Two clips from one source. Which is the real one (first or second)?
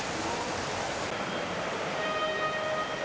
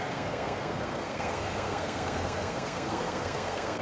first